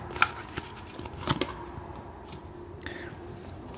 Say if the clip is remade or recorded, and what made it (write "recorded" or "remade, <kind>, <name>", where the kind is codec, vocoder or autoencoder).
recorded